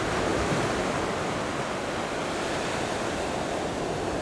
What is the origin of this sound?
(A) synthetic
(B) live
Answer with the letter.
B